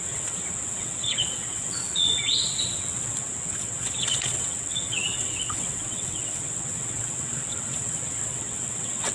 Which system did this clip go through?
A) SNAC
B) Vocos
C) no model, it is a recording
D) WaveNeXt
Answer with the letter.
D